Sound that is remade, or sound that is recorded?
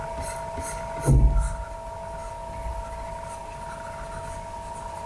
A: recorded